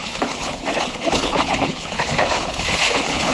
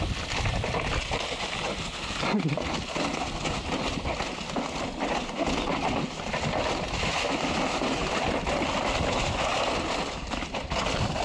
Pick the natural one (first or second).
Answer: second